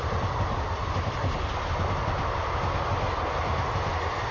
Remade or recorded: recorded